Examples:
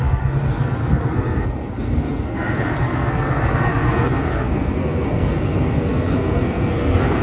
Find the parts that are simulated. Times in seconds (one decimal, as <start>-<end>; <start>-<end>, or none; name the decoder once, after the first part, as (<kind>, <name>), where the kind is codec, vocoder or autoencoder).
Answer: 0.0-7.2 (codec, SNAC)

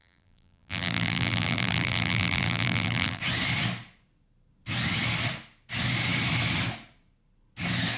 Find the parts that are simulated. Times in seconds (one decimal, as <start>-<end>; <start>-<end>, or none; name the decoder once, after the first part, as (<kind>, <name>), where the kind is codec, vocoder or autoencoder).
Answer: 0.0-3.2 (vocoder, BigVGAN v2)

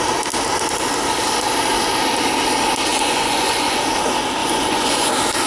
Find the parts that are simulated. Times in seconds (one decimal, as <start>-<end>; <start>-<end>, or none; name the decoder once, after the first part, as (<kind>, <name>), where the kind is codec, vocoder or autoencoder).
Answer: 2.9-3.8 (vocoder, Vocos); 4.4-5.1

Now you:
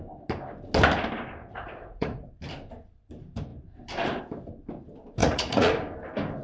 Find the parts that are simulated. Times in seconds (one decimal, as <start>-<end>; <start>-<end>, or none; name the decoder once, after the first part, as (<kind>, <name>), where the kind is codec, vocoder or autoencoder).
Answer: 1.4-2.3 (vocoder, Vocos); 5.2-5.7

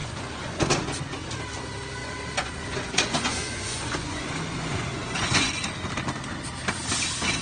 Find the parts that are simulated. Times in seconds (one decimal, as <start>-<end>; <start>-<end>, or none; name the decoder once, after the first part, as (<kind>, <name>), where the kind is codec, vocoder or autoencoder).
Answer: 0.0-1.0 (vocoder, Vocos); 2.0-5.5

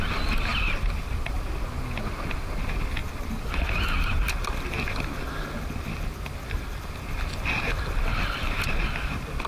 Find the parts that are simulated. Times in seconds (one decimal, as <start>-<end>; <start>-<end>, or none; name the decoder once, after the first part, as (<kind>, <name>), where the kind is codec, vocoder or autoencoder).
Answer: none

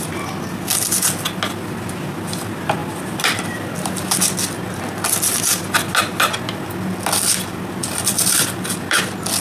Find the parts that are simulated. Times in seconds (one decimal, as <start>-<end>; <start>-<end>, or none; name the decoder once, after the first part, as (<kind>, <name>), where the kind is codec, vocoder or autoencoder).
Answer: 2.8-3.9 (vocoder, BigVGAN v2); 7.8-9.0